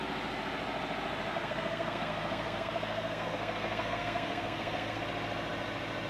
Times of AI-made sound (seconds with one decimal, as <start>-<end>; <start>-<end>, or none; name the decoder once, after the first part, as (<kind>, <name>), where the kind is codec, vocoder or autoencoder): 1.3-5.0 (codec, SNAC)